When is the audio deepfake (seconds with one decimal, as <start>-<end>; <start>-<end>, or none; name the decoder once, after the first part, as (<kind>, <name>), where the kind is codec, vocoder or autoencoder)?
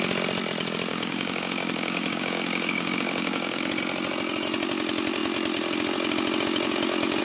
0.9-3.7 (codec, DAC)